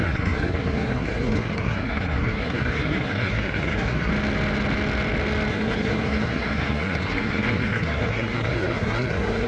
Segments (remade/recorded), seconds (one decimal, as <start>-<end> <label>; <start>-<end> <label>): 0.0-4.1 remade; 4.1-5.5 recorded; 5.5-9.5 remade